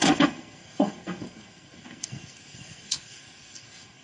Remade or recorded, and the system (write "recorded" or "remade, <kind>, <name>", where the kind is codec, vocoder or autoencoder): remade, codec, SNAC